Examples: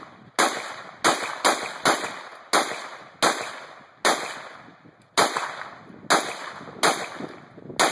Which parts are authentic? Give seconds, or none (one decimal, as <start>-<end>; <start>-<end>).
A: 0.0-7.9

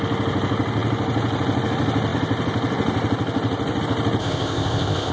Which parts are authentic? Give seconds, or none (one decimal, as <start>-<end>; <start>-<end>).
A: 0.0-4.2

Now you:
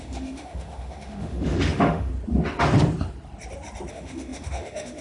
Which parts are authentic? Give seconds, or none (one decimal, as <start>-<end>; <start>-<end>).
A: 2.1-3.9